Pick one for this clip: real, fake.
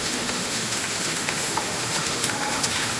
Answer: fake